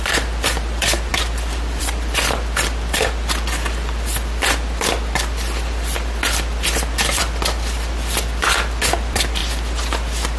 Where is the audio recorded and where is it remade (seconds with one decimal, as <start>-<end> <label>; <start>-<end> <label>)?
0.0-9.4 remade; 9.4-10.4 recorded